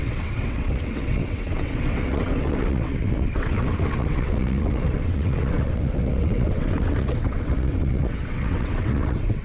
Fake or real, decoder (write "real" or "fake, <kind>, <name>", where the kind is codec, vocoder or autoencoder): fake, vocoder, WaveNeXt